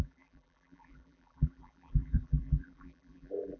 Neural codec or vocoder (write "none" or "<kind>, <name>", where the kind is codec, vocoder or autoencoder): vocoder, BigVGAN v2